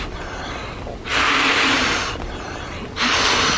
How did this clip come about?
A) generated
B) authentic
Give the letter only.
B